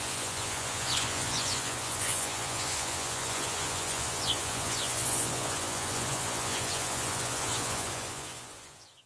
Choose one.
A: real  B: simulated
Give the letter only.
B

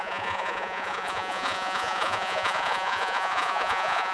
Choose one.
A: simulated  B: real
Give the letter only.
A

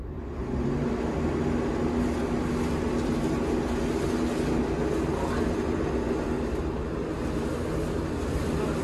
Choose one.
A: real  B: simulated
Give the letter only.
A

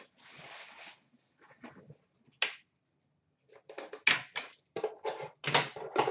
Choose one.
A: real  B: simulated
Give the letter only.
A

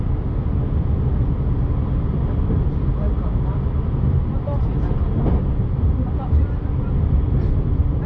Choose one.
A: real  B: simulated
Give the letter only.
B